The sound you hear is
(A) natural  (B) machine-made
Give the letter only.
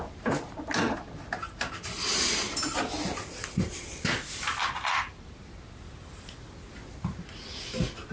A